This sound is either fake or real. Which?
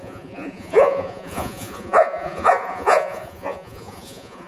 fake